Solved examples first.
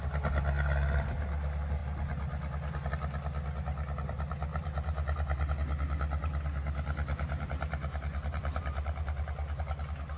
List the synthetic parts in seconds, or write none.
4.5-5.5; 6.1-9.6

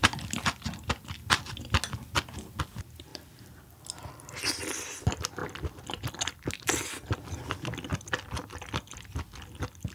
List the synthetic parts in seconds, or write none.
3.1-3.6; 7.9-8.9

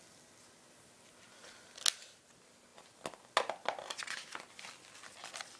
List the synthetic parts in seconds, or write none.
none

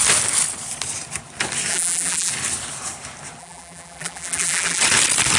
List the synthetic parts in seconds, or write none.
1.7-2.3; 3.4-4.8